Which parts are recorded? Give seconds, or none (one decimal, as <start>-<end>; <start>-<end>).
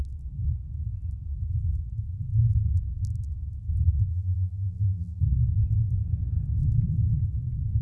0.0-4.1; 5.2-7.8